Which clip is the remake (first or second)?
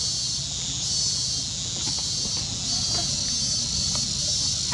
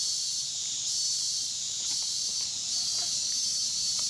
second